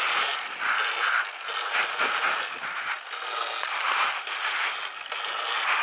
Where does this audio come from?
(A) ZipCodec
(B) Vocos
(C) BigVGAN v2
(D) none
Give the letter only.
D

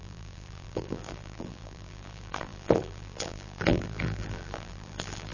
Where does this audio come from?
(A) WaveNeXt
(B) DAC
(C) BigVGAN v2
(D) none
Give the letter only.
C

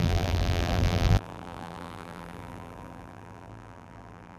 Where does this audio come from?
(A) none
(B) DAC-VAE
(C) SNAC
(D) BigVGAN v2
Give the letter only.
D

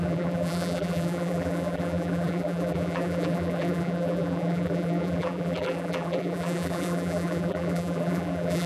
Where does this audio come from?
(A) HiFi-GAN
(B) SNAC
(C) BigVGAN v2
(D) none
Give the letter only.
C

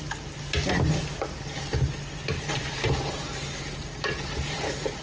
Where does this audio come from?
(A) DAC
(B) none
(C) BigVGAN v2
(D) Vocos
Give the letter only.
C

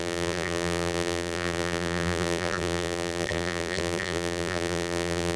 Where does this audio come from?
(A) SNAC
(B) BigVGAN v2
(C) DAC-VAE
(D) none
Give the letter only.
B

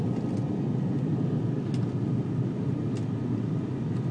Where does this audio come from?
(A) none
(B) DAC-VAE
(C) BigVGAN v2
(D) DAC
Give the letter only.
A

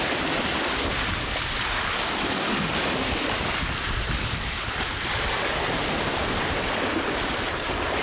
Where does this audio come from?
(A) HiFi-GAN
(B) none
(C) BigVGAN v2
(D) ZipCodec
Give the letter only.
C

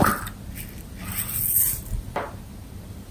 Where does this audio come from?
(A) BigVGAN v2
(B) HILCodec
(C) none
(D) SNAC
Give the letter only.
C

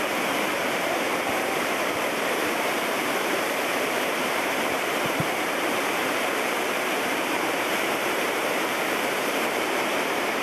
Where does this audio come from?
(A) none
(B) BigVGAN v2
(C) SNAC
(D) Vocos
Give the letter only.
B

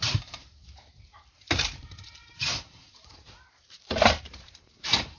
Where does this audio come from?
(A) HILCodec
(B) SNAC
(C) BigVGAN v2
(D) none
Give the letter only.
C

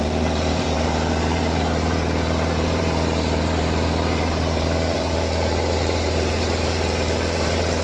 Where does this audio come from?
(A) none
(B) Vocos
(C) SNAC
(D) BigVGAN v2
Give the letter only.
D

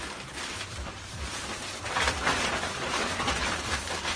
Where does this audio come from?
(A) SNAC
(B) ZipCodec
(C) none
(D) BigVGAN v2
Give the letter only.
D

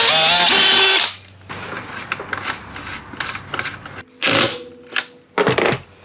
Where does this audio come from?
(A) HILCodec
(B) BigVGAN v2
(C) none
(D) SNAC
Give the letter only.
C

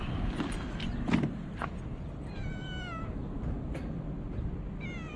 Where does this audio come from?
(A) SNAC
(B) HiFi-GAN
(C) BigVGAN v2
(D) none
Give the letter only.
D